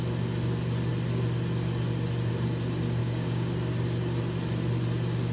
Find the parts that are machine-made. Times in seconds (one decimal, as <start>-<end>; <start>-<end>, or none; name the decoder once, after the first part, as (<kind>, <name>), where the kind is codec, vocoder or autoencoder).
3.0-3.5 (codec, DAC)